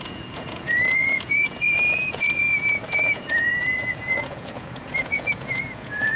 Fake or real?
fake